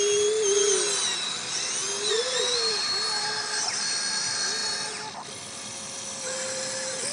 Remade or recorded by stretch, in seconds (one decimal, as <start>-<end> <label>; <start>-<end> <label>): 0.0-7.1 recorded